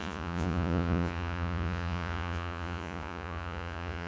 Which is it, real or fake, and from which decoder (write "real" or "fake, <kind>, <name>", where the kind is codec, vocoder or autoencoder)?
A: fake, vocoder, Vocos